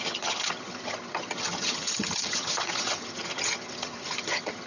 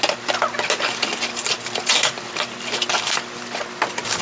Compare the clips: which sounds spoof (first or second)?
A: first